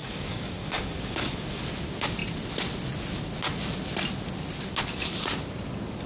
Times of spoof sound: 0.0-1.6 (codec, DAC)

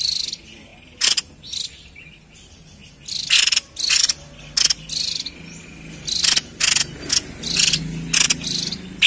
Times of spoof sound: none

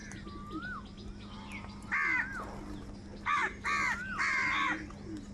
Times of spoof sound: none

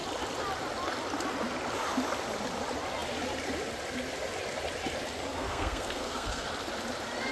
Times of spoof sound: 5.3-6.5 (codec, SNAC)

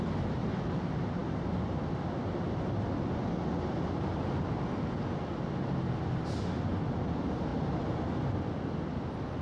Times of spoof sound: none

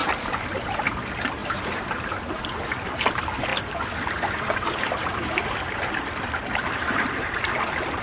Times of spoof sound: 0.0-0.6 (vocoder, BigVGAN v2); 3.5-8.0

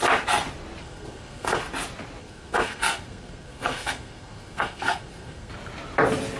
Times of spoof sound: 0.8-1.6 (codec, SNAC); 2.2-5.5

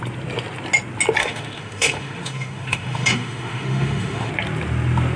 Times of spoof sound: 1.2-4.3 (autoencoder, DAC-VAE)